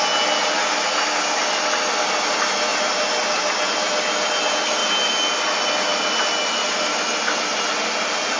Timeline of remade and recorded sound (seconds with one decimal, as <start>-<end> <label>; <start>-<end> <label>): 0.0-8.4 recorded